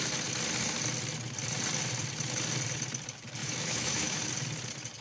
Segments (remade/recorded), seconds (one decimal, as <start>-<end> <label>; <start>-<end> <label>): 0.0-3.4 recorded; 3.4-4.2 remade; 4.2-5.0 recorded